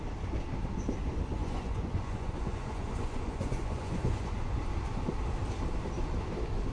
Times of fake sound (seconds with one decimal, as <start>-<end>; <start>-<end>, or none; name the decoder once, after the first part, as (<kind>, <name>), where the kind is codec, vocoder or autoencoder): 1.4-4.6 (vocoder, Vocos)